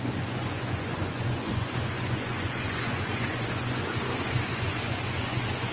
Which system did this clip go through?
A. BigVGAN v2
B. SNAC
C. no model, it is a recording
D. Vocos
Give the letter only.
D